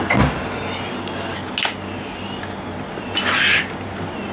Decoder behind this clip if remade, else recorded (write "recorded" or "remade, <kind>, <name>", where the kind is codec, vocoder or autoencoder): recorded